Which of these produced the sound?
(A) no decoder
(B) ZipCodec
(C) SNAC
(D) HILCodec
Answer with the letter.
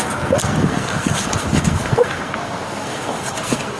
C